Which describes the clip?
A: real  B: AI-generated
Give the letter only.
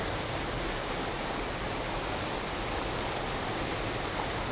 A